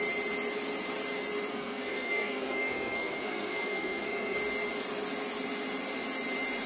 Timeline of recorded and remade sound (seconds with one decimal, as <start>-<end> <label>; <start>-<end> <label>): 0.0-1.5 recorded; 1.5-4.4 remade; 4.4-6.7 recorded